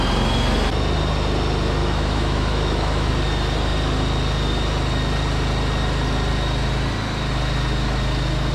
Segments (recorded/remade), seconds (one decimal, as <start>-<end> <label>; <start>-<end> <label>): 0.0-1.8 recorded; 1.8-3.1 remade; 3.1-8.5 recorded